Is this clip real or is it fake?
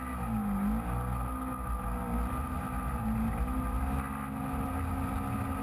real